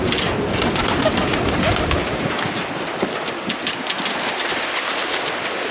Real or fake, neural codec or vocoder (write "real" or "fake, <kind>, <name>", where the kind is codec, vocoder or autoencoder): real